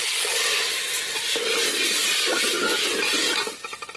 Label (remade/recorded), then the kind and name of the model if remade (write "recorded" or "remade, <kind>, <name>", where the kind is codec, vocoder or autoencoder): recorded